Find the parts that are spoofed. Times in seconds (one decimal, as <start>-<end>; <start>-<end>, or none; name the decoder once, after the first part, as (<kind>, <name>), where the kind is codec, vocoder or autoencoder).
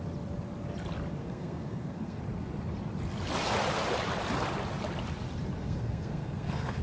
1.2-2.2 (codec, SNAC); 5.6-6.8